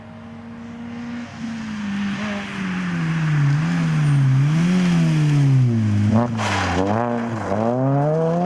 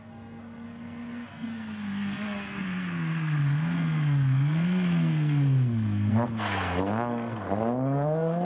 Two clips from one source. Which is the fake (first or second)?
second